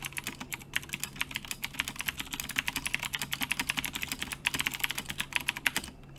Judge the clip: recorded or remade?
remade